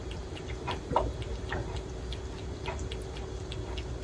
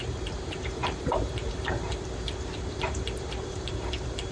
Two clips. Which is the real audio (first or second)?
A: first